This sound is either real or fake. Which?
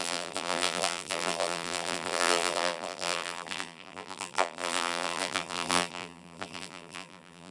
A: fake